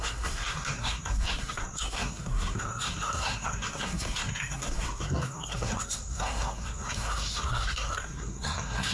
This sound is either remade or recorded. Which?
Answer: remade